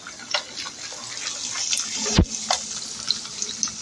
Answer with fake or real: real